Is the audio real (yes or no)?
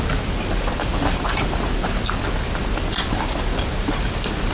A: yes